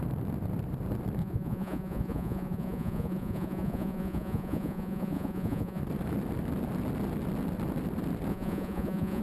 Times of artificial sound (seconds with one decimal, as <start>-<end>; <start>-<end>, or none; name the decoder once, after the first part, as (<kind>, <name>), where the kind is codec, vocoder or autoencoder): 1.2-5.8 (vocoder, Vocos); 8.3-9.2